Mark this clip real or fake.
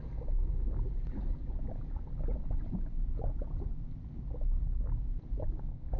real